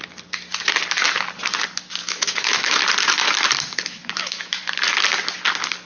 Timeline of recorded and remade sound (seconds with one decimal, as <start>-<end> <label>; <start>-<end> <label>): 0.0-2.0 recorded; 2.0-2.8 remade; 2.8-4.0 recorded; 4.0-4.6 remade; 4.6-5.9 recorded